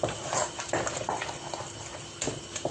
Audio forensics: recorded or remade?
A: recorded